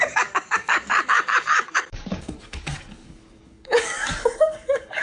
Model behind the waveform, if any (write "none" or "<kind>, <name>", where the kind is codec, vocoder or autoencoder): codec, DAC